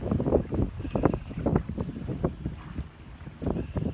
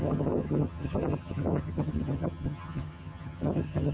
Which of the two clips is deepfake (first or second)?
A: second